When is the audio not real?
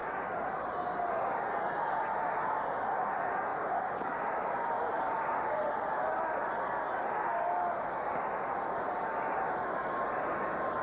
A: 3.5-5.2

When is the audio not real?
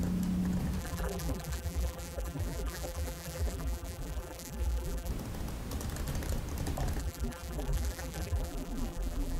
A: 0.8-5.1; 7.0-9.4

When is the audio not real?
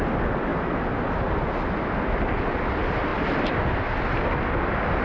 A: 3.1-3.8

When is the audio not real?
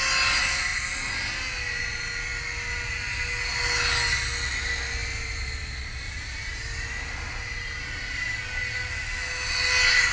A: 5.0-8.4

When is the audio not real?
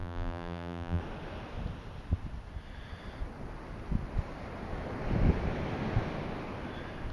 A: 0.0-1.0